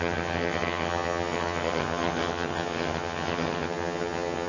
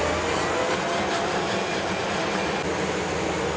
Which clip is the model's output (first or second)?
first